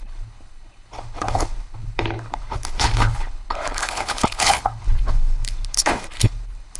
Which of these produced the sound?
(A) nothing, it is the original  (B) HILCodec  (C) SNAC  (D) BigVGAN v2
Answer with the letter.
B